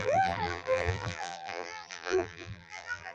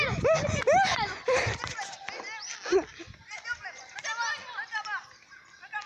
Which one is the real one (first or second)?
second